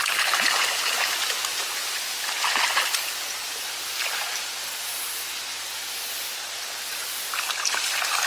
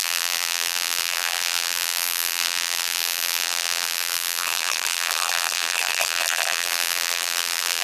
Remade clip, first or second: second